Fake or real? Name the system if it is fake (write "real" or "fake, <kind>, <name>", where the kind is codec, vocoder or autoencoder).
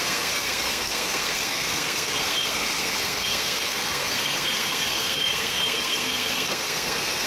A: fake, codec, SNAC